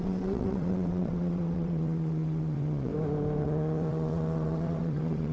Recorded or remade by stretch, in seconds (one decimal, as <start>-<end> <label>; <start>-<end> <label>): 0.0-2.9 remade; 2.9-3.4 recorded; 3.4-5.3 remade